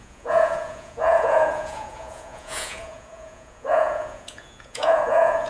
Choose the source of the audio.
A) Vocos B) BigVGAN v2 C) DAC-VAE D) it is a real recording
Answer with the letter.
A